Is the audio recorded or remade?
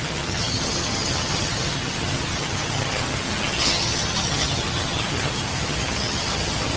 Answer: remade